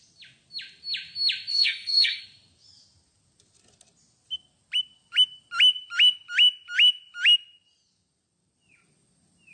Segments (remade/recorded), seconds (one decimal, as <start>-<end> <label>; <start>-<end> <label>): 0.0-1.5 recorded; 1.5-2.2 remade; 2.2-9.5 recorded